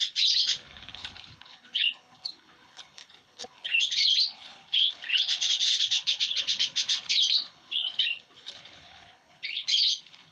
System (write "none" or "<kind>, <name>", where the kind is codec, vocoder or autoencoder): codec, HILCodec